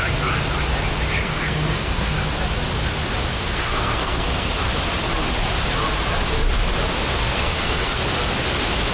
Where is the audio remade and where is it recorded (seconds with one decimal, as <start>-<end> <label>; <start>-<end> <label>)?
0.0-1.2 recorded; 1.2-2.3 remade; 2.3-3.3 recorded; 3.3-4.5 remade; 4.5-7.3 recorded; 7.3-8.0 remade; 8.0-8.9 recorded

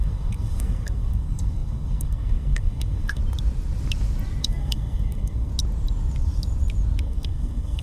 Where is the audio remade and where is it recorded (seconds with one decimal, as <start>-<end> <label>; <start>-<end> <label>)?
0.0-3.2 remade; 3.2-4.4 recorded; 4.4-5.5 remade; 5.5-7.0 recorded; 7.0-7.8 remade